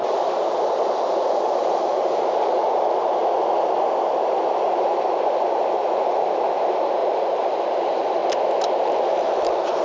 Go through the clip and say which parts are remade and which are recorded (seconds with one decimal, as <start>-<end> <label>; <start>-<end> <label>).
0.0-1.9 remade; 1.9-2.5 recorded; 2.5-3.2 remade; 3.2-4.7 recorded; 4.7-8.2 remade; 8.2-8.8 recorded; 8.8-9.8 remade